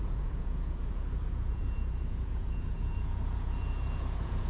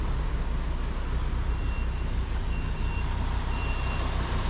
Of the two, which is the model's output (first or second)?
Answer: first